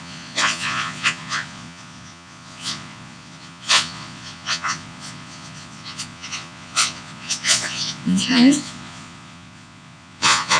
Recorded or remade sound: remade